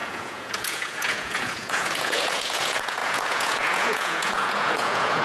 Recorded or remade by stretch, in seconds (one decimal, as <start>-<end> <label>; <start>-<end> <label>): 0.0-5.2 remade